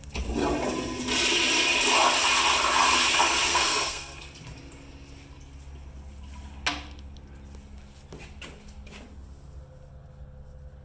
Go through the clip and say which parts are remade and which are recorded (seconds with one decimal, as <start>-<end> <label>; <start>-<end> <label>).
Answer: 0.0-3.5 recorded; 3.5-4.2 remade; 4.2-10.8 recorded